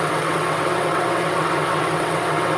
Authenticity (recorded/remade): remade